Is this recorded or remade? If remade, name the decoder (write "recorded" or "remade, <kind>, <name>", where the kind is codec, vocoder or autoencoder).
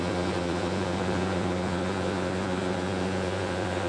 remade, vocoder, Vocos